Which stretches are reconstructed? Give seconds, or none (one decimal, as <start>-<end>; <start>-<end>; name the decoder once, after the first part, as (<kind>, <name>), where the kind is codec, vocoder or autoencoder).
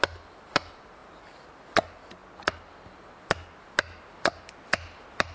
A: none